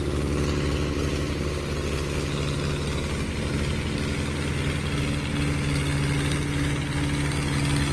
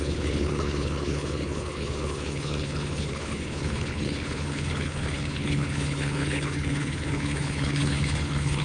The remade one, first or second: second